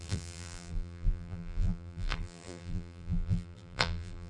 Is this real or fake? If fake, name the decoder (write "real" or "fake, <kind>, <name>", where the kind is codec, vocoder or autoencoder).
fake, vocoder, BigVGAN v2